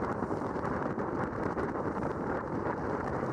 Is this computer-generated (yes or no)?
yes